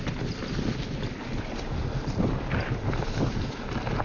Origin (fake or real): real